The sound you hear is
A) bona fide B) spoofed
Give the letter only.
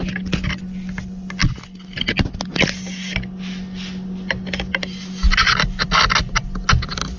A